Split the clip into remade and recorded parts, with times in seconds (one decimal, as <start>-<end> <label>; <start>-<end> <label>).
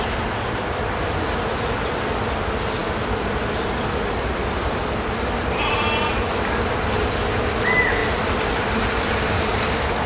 0.0-10.1 recorded